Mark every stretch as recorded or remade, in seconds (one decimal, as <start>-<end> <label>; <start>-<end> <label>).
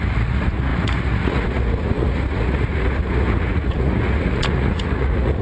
0.0-5.4 remade